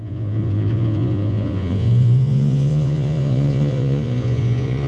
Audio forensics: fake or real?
fake